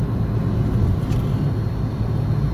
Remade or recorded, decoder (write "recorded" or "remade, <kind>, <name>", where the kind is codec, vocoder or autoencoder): recorded